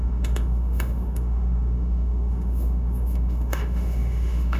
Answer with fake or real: fake